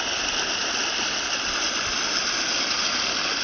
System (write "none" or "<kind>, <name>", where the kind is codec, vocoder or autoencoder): none